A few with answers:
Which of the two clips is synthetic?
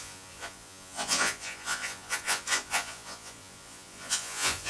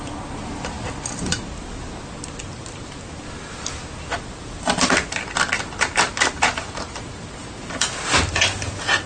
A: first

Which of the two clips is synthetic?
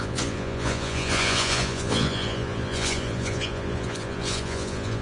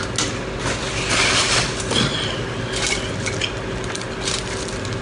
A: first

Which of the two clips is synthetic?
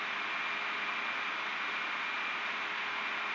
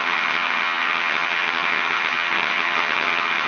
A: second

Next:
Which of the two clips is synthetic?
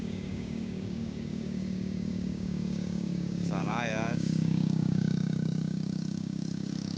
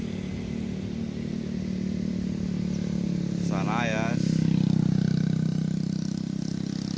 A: first